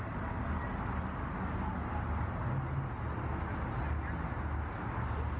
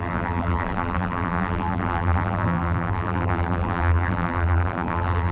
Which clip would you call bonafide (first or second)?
first